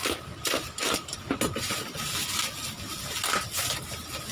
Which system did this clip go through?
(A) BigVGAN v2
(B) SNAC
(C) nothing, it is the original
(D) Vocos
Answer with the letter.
C